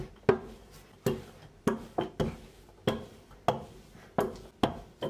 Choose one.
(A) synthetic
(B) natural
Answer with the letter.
B